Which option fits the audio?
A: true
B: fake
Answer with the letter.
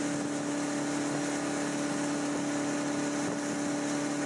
A